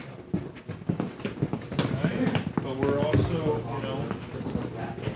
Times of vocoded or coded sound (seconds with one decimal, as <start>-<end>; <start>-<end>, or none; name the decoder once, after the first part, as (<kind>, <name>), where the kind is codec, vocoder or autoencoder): none